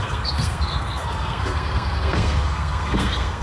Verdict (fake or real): fake